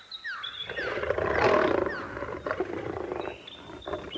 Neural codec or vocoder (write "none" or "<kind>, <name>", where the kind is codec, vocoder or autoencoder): none